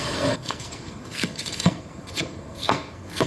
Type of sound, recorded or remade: remade